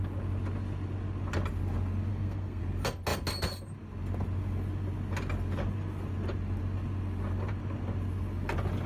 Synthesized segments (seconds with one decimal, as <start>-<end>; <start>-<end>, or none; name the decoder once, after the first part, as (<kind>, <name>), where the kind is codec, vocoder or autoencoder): 2.1-2.6 (codec, SNAC)